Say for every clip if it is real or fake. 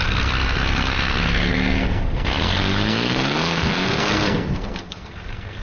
fake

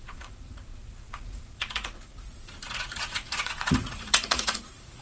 fake